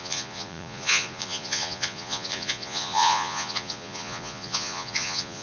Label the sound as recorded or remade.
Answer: remade